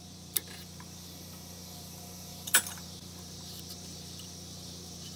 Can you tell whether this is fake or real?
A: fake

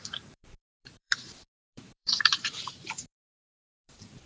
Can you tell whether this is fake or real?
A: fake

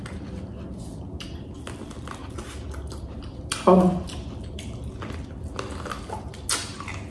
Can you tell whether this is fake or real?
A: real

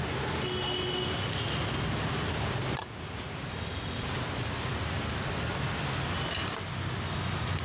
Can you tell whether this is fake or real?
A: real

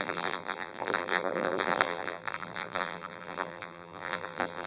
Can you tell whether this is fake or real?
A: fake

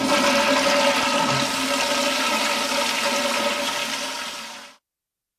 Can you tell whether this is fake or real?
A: real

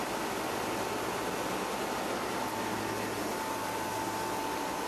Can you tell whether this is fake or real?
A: fake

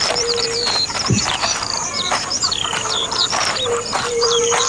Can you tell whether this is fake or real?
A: fake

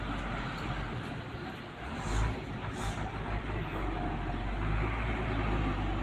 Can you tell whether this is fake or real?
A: real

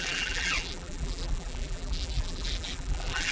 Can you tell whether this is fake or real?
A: fake